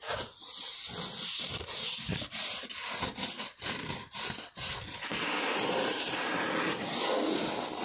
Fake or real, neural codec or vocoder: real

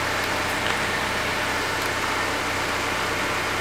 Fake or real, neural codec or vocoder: real